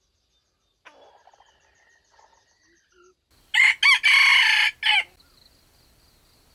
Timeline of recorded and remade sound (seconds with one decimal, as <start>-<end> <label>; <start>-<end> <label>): 0.0-6.5 recorded